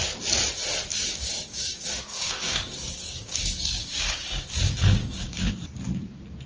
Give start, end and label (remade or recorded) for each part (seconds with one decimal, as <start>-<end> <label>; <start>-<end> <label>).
0.0-0.9 recorded; 0.9-4.5 remade; 4.5-5.0 recorded; 5.0-5.5 remade; 5.5-6.5 recorded